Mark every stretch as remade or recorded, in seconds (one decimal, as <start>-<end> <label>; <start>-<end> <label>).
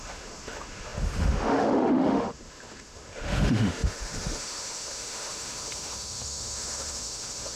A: 0.0-7.6 remade